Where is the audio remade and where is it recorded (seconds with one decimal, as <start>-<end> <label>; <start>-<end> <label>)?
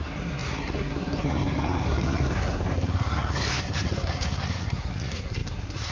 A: 0.0-5.9 remade